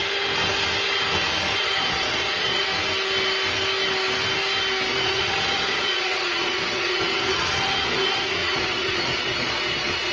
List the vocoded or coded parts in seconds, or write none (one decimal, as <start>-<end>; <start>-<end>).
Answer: 1.6-2.7; 4.9-10.1